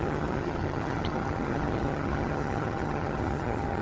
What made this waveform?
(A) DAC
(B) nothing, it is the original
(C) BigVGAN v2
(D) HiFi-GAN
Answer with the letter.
D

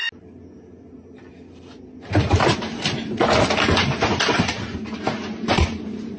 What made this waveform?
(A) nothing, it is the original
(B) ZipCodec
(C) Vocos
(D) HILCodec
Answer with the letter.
A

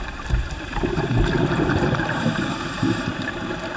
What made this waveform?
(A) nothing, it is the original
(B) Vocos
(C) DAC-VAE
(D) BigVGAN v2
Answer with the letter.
D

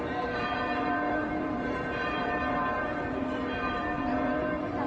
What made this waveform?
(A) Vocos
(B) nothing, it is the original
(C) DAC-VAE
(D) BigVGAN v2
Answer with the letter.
D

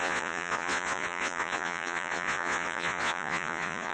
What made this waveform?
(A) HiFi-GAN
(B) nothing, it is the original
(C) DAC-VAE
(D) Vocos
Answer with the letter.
D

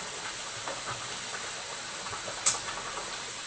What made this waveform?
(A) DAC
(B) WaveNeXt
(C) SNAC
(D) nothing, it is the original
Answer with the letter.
D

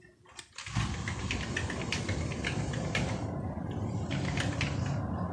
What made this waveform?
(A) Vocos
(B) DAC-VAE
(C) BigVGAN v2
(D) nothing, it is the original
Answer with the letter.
D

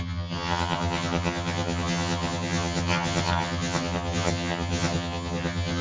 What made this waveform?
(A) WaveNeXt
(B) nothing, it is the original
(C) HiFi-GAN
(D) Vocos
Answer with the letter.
C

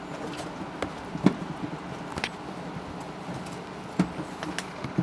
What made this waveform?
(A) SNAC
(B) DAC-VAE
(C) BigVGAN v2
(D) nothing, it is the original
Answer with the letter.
D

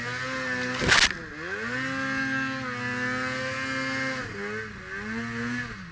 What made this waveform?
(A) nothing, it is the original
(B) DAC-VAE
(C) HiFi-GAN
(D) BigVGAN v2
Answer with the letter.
A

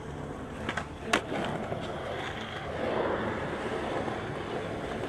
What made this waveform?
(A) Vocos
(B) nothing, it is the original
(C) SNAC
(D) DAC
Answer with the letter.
B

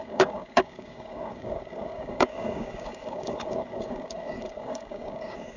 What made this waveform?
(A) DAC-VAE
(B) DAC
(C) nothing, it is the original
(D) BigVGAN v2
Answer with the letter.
B